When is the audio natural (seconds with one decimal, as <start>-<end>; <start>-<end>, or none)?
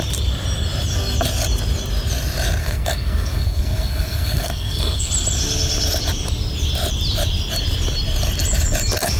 0.0-2.6; 5.1-9.2